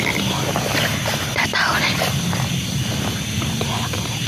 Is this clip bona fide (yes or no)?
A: yes